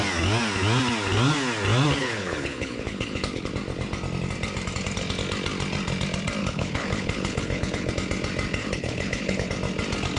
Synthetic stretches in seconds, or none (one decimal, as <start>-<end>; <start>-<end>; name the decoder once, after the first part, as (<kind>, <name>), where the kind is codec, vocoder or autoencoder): 2.0-3.5 (codec, HILCodec); 6.4-7.9; 8.6-9.5